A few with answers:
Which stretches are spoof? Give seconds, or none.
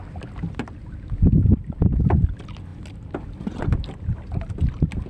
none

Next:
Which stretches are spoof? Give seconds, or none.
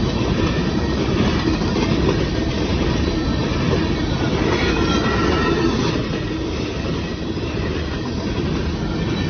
none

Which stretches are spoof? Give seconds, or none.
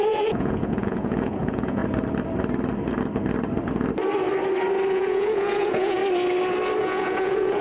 0.0-1.8 (vocoder, Vocos); 4.9-6.0; 6.8-7.6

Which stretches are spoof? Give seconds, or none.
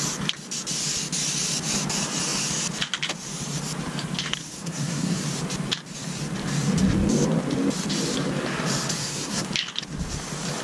4.4-5.2 (codec, SNAC); 9.0-9.5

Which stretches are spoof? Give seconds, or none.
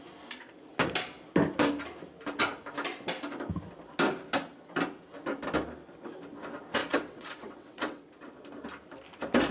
6.8-8.1 (vocoder, WaveNeXt)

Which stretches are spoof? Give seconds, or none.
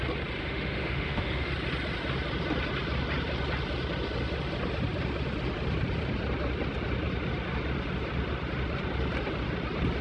0.4-1.5 (autoencoder, DAC-VAE)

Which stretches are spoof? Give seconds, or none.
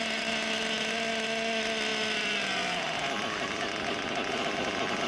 none